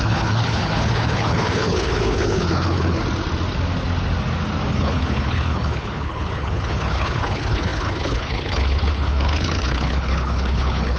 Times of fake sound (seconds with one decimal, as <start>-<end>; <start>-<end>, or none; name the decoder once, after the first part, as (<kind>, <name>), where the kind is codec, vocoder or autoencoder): 0.0-3.0 (codec, HILCodec); 4.7-11.0